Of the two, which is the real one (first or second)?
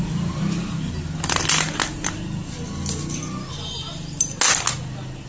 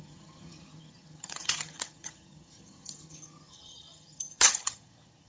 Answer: first